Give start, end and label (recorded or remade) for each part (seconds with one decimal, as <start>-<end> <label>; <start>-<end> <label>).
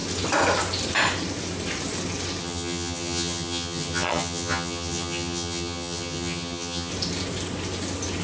0.0-2.4 recorded; 2.4-6.9 remade; 6.9-8.2 recorded